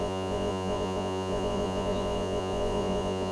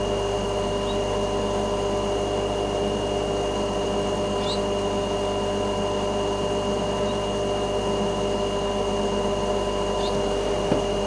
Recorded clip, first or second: second